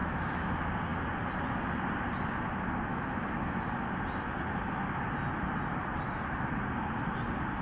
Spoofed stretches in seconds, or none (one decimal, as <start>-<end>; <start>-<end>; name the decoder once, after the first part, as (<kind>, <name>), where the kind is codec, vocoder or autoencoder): 0.0-0.5 (autoencoder, DAC-VAE); 2.9-3.6